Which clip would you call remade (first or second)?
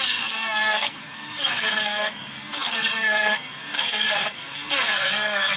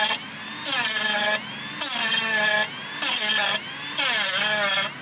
first